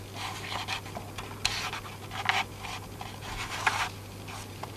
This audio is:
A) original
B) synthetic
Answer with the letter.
A